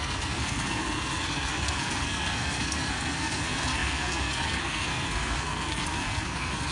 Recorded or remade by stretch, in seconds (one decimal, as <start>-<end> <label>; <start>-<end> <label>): 0.0-6.7 remade